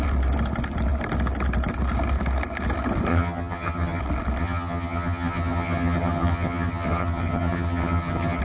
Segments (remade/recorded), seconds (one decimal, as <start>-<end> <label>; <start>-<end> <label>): 0.0-3.1 recorded; 3.1-4.0 remade; 4.0-4.4 recorded; 4.4-8.4 remade